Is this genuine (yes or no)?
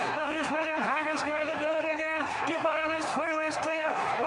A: no